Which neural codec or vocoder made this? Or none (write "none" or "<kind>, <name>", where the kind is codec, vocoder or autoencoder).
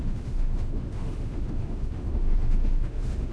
autoencoder, DAC-VAE